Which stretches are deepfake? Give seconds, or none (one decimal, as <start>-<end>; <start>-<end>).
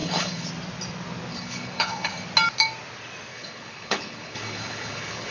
0.0-0.5; 1.3-2.1; 3.3-5.3